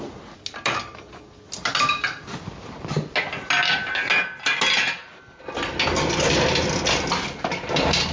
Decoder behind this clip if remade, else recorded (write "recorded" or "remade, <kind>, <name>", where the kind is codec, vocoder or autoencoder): recorded